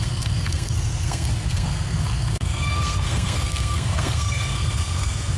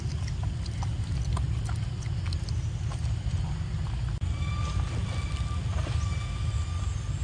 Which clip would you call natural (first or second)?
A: second